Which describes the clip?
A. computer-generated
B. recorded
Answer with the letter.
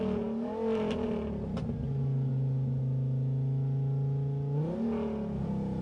B